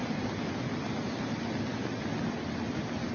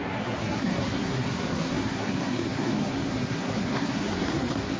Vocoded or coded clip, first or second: second